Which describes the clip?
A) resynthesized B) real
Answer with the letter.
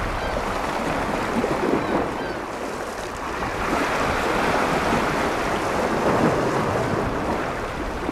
B